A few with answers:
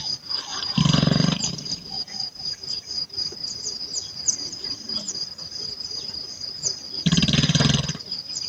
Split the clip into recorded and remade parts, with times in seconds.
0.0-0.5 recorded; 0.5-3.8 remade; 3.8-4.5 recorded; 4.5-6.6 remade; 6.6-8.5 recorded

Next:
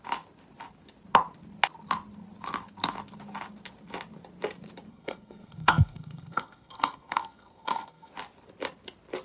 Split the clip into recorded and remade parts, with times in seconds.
0.0-4.9 recorded; 4.9-8.1 remade; 8.1-9.2 recorded

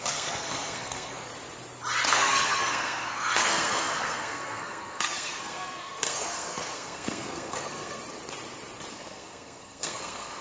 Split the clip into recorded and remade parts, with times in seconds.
0.0-1.3 remade; 1.3-2.1 recorded; 2.1-8.0 remade; 8.0-8.9 recorded; 8.9-10.4 remade

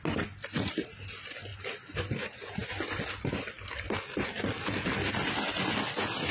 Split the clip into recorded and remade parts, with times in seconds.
0.0-6.3 recorded

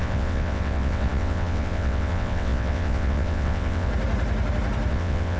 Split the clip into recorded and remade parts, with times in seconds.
0.0-3.9 remade; 3.9-4.9 recorded; 4.9-5.4 remade

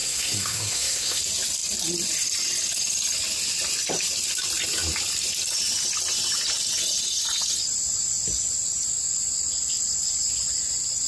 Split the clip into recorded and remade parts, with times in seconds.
0.0-1.2 remade; 1.2-11.1 recorded